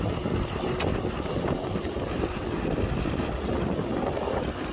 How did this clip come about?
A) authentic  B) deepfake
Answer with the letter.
A